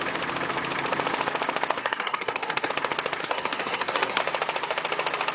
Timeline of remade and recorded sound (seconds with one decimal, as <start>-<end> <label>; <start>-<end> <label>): 0.0-1.8 recorded; 1.8-2.7 remade; 2.7-3.2 recorded; 3.2-4.2 remade; 4.2-5.3 recorded